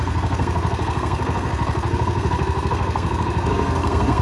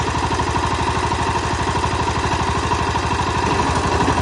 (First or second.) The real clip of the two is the second